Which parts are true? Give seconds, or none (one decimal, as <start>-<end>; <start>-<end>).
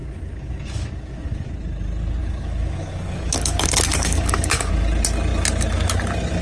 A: 1.5-2.2; 4.7-6.4